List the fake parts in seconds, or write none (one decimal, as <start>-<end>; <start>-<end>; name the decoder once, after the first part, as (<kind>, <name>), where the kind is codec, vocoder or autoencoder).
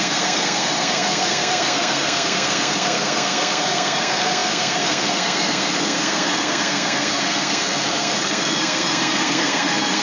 0.0-10.0 (codec, SNAC)